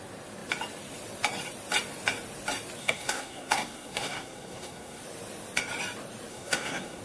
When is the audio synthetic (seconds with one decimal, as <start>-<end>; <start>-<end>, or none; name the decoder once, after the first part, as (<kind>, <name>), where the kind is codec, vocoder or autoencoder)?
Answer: 2.8-5.0 (codec, SNAC); 6.3-7.0